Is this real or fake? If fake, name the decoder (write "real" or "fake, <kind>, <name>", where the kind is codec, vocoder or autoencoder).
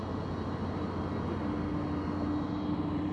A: real